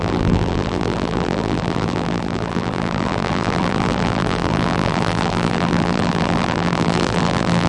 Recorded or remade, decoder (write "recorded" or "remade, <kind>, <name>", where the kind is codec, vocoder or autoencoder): remade, vocoder, BigVGAN v2